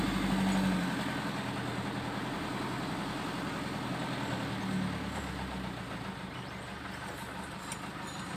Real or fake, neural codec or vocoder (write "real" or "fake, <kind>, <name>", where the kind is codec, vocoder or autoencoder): real